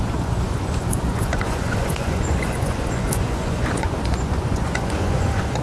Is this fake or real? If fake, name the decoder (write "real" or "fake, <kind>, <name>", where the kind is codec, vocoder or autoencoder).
fake, vocoder, Vocos